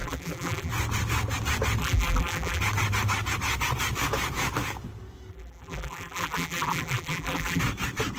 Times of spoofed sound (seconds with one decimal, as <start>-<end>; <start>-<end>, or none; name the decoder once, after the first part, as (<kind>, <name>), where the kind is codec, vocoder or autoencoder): 0.0-0.7 (vocoder, BigVGAN v2); 1.8-2.6; 5.3-7.6